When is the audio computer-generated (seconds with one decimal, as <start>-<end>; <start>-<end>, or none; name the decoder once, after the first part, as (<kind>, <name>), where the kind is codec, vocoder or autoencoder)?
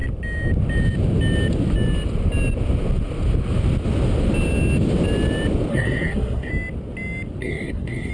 5.7-6.5 (codec, SNAC); 7.4-8.1